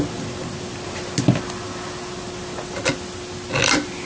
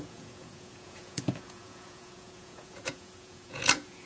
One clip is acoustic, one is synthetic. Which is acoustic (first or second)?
first